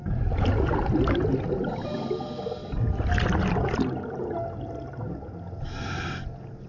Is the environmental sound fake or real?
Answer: real